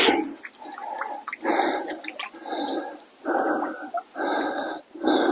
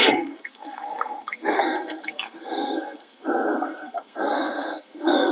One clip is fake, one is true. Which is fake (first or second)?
second